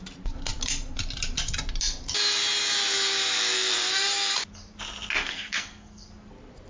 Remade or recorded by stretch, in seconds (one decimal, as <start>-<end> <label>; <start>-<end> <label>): 0.0-5.2 recorded; 5.2-6.1 remade; 6.1-6.7 recorded